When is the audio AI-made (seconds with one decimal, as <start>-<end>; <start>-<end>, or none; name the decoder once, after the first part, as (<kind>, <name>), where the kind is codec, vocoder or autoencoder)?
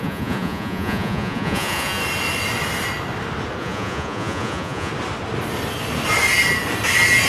0.0-2.0 (vocoder, Vocos); 3.6-4.9